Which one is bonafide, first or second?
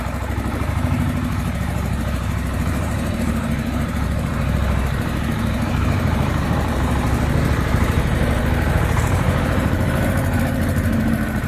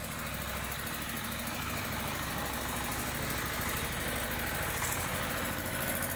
second